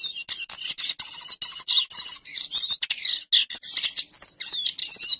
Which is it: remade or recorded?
recorded